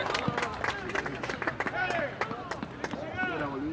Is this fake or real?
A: real